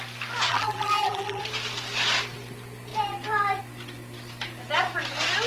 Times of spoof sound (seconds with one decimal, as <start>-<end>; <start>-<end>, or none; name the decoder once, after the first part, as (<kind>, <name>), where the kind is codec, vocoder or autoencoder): 0.5-1.4 (vocoder, BigVGAN v2)